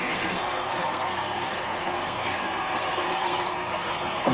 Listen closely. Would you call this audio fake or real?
fake